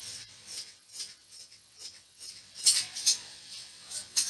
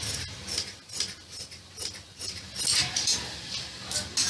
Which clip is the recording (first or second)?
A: second